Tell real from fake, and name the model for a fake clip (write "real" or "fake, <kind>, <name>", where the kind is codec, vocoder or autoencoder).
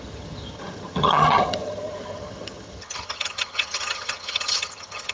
fake, vocoder, HiFi-GAN